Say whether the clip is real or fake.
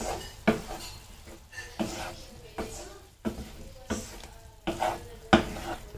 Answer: real